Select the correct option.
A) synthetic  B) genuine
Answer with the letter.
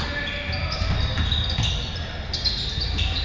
B